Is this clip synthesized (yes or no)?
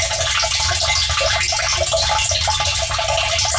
no